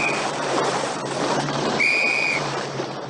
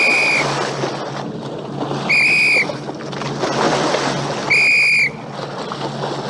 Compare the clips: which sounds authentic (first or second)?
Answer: second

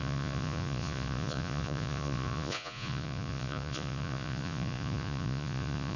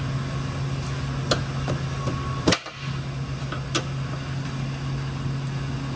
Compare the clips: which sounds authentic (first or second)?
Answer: second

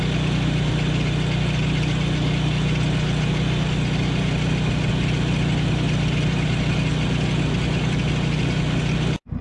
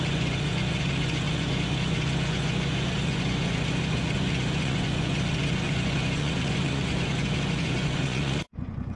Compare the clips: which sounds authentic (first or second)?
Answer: first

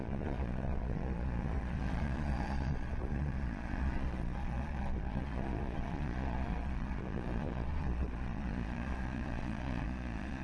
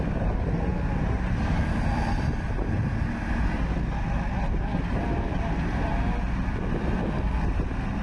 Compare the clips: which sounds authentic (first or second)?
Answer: second